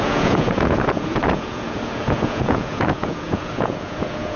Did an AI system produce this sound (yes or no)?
yes